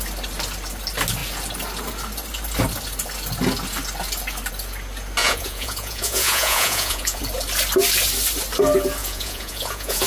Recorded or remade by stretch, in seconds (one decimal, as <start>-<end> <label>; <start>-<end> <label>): 0.0-5.2 recorded; 5.2-7.2 remade; 7.2-9.0 recorded; 9.0-10.1 remade